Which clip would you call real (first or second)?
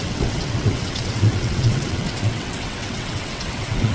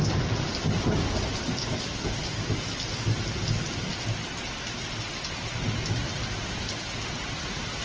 second